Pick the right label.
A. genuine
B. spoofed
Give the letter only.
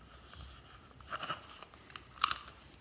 A